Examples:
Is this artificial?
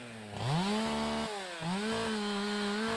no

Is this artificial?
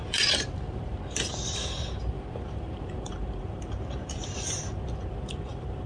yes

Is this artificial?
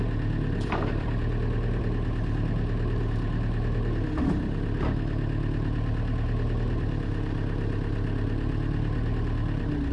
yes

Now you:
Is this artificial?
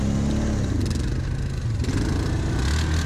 no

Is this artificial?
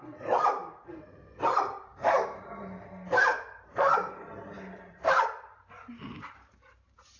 yes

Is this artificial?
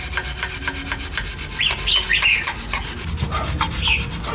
no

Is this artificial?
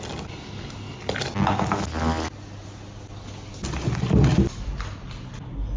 no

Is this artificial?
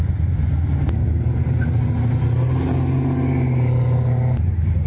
no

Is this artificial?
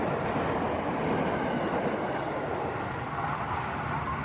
no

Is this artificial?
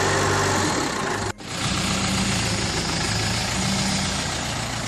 no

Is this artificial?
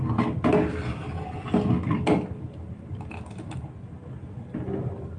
no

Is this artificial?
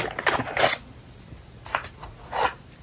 no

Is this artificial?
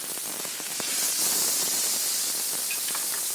yes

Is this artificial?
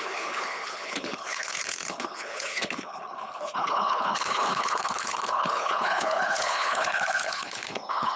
yes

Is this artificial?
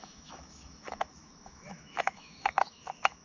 yes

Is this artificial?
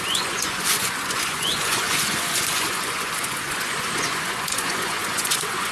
yes